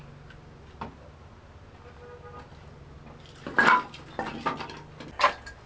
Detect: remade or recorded recorded